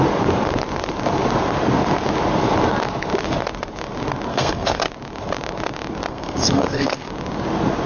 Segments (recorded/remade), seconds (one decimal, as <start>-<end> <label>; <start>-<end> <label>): 0.0-4.3 recorded; 4.3-4.9 remade; 4.9-6.1 recorded; 6.1-7.1 remade; 7.1-7.9 recorded